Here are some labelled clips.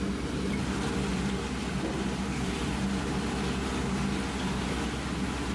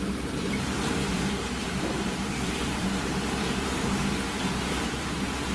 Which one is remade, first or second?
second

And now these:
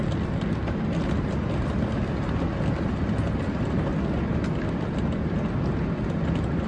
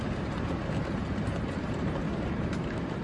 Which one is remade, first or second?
second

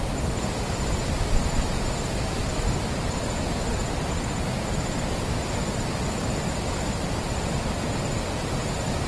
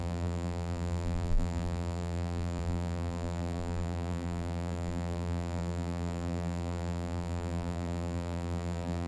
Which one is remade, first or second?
second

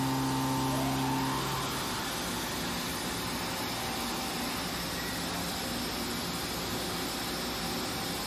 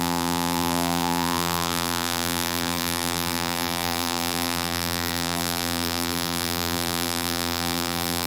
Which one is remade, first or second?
second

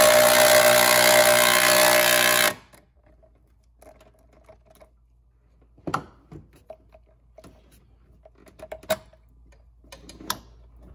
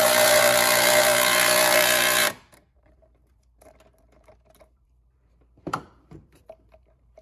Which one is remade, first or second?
second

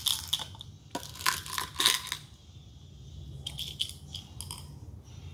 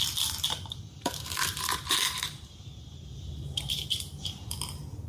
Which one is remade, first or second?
second